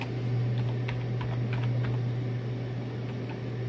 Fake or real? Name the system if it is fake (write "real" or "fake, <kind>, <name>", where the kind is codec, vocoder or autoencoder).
real